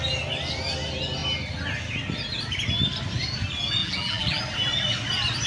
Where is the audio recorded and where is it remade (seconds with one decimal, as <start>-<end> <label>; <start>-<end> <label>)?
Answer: 0.0-3.8 recorded; 3.8-4.4 remade; 4.4-5.5 recorded